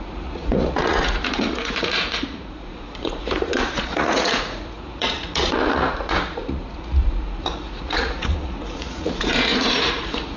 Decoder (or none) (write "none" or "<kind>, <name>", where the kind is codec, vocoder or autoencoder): vocoder, Vocos